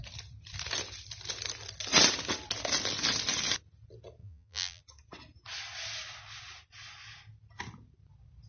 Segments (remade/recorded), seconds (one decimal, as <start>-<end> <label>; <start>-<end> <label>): 0.0-4.2 recorded; 4.2-4.8 remade; 4.8-8.5 recorded